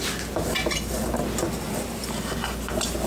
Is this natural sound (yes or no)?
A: yes